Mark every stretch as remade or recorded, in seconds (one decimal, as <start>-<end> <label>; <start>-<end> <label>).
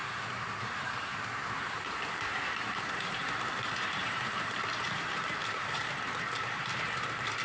0.0-5.8 remade; 5.8-6.6 recorded; 6.6-7.4 remade